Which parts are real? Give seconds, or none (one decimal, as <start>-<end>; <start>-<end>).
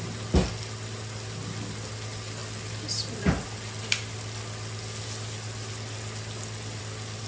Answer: 0.0-7.3